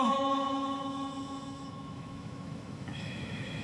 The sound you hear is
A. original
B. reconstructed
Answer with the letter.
B